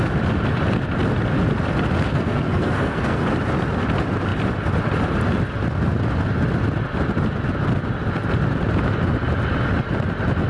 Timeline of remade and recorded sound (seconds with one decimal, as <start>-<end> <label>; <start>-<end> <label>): 0.0-2.1 recorded; 2.1-3.2 remade; 3.2-10.5 recorded